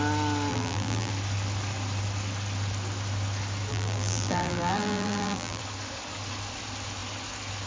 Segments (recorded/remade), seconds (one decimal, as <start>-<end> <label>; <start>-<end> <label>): 0.0-0.5 recorded; 0.5-1.1 remade; 1.1-3.7 recorded; 3.7-5.6 remade; 5.6-7.7 recorded